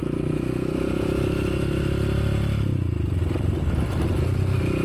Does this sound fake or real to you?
real